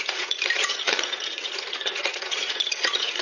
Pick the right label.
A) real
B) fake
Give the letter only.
B